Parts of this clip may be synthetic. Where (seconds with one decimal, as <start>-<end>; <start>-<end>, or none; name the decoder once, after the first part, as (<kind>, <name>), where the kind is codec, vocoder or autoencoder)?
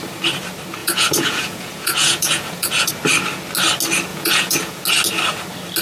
0.8-2.9 (vocoder, Vocos); 4.1-4.8